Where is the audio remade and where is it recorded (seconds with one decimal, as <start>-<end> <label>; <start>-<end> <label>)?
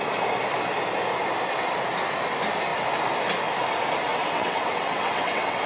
0.0-4.1 recorded; 4.1-5.7 remade